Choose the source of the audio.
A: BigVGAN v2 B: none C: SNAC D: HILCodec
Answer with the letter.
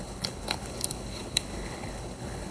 D